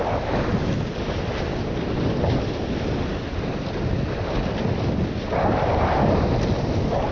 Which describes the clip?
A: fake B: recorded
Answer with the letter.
B